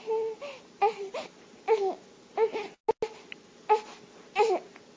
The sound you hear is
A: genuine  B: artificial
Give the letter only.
A